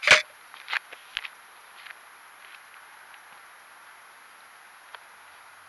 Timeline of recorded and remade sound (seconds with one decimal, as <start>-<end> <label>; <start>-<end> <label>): 0.0-5.7 recorded